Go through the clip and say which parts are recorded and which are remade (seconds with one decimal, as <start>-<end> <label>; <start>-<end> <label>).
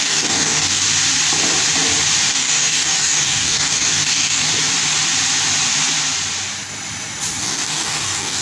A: 0.0-0.8 remade; 0.8-2.3 recorded; 2.3-4.5 remade; 4.5-7.4 recorded; 7.4-8.4 remade